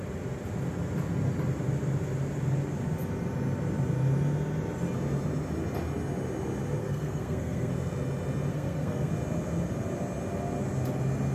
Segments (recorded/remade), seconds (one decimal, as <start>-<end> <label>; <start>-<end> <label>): 0.0-6.8 recorded; 6.8-7.7 remade; 7.7-8.5 recorded; 8.5-9.1 remade; 9.1-11.3 recorded